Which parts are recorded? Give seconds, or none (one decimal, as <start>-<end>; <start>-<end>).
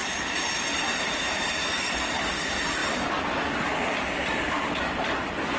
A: 2.8-4.3